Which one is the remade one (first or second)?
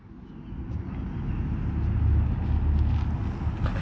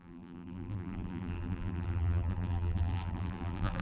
second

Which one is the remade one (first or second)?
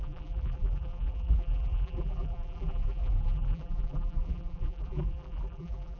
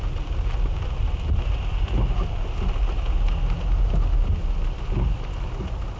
first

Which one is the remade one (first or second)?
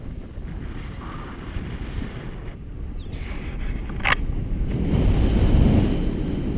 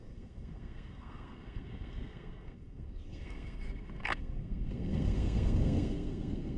second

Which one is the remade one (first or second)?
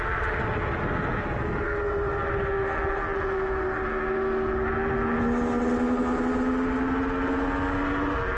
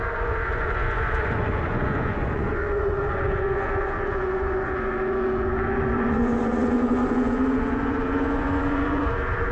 second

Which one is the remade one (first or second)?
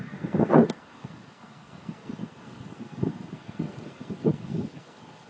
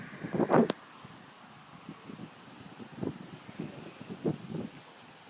first